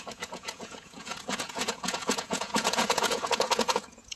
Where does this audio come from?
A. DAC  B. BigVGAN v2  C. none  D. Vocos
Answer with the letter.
D